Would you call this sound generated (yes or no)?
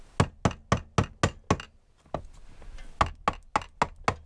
no